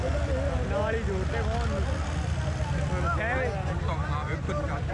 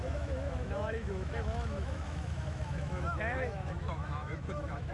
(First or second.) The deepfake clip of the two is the second